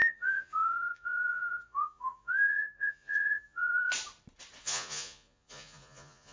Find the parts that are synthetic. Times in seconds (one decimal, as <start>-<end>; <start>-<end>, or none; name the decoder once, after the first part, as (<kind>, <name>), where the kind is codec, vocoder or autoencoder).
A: 0.0-3.9 (vocoder, Vocos); 4.6-6.3

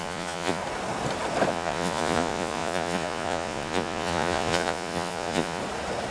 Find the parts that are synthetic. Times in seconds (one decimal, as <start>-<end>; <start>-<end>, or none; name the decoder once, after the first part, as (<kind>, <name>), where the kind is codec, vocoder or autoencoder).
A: 0.0-0.6 (vocoder, Vocos); 1.5-5.6

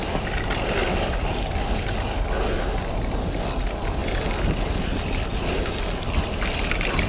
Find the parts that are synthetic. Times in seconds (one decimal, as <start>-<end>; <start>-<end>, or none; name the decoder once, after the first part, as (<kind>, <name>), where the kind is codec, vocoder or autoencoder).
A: none

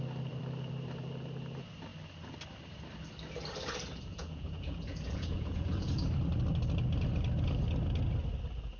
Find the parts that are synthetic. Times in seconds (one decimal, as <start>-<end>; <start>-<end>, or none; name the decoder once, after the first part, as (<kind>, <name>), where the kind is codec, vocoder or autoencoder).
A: 4.1-5.9 (vocoder, Vocos)

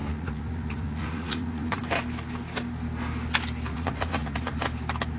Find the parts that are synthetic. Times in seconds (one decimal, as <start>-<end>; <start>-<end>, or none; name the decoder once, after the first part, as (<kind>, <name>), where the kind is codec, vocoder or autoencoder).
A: 0.0-1.8 (vocoder, Vocos); 3.7-4.6

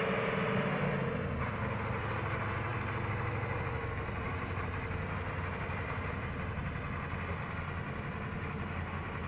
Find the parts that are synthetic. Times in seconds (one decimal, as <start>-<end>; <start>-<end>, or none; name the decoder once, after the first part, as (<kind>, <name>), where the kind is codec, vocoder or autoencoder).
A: none